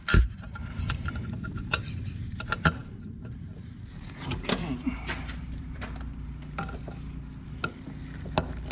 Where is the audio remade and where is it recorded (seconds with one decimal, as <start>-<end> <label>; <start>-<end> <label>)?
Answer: 0.0-7.6 remade; 7.6-8.7 recorded